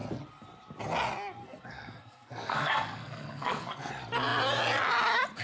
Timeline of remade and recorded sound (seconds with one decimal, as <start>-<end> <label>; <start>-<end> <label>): 0.0-1.4 recorded; 1.4-3.9 remade; 3.9-5.4 recorded